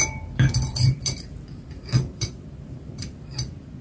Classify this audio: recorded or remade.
remade